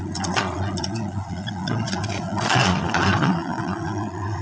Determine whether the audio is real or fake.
fake